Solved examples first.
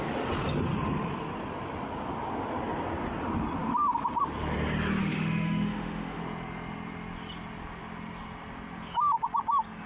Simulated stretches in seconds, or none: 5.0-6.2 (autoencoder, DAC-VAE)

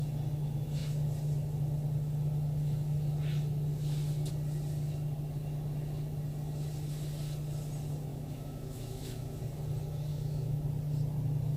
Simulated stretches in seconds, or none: 8.1-9.4 (autoencoder, DAC-VAE); 10.1-10.6

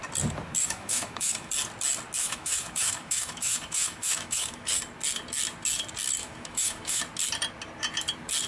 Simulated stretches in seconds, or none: 0.6-1.5 (autoencoder, DAC-VAE); 2.2-4.8; 6.2-7.0

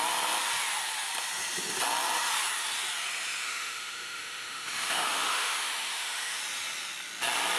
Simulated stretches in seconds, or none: 3.4-6.4 (autoencoder, DAC-VAE)

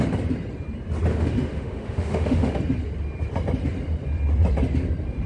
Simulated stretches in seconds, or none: 1.1-2.6 (autoencoder, DAC-VAE)

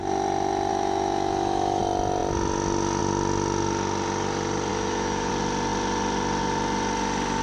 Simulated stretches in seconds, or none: 0.7-1.8 (autoencoder, DAC-VAE); 4.7-5.3

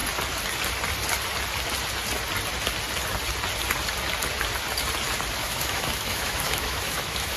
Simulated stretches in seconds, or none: 5.4-7.4 (autoencoder, DAC-VAE)